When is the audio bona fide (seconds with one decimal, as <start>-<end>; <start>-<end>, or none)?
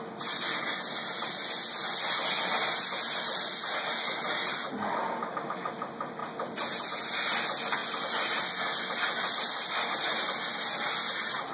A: 0.0-5.2; 5.7-11.5